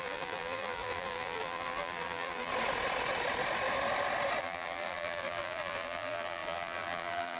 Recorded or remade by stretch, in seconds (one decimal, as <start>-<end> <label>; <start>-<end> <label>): 0.0-2.5 remade; 2.5-4.4 recorded; 4.4-7.4 remade